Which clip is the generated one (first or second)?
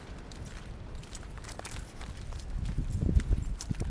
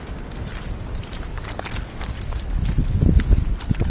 first